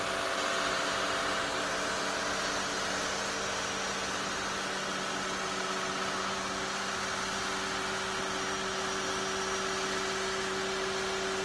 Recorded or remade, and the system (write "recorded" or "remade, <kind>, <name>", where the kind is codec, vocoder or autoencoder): recorded